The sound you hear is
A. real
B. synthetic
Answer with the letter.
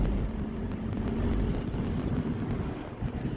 A